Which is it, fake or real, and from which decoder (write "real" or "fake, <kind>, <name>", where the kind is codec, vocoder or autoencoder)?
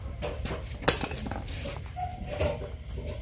real